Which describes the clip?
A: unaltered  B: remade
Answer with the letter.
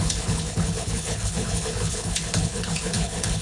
B